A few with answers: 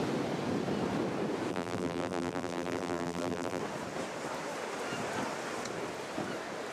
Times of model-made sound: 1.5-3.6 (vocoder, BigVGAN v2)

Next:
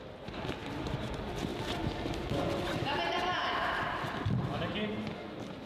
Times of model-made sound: 0.6-1.1 (vocoder, BigVGAN v2)

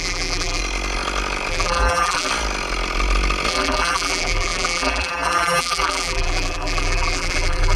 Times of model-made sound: 0.0-0.6 (vocoder, BigVGAN v2); 1.5-2.3; 3.5-7.8

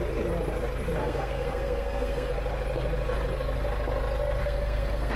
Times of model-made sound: 1.0-2.3 (codec, SNAC); 4.4-5.2